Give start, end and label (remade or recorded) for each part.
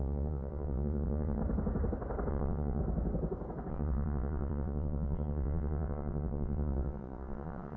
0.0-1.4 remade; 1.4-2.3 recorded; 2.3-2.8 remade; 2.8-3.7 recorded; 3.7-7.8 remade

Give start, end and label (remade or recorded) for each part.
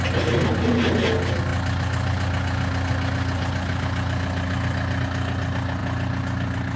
0.0-6.8 recorded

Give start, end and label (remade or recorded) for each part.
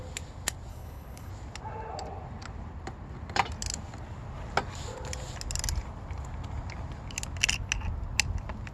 0.0-0.7 recorded; 0.7-1.3 remade; 1.3-8.7 recorded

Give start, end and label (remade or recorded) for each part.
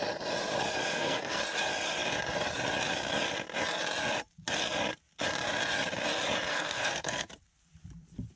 0.0-0.9 recorded; 0.9-1.4 remade; 1.4-6.5 recorded; 6.5-7.3 remade; 7.3-8.4 recorded